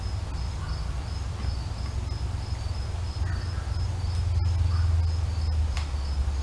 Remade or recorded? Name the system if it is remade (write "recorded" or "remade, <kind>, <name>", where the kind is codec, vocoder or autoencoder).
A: recorded